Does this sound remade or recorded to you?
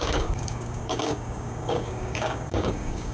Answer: remade